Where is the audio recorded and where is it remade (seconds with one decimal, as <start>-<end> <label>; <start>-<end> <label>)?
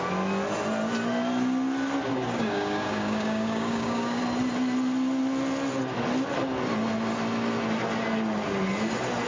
0.0-2.1 recorded; 2.1-4.2 remade; 4.2-9.3 recorded